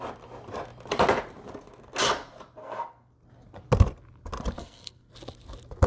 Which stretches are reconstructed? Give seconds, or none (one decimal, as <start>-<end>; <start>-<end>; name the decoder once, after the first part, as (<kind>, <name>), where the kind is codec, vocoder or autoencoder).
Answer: 2.6-3.1 (codec, SNAC); 4.6-5.1